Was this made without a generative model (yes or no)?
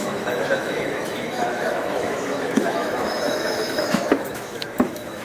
no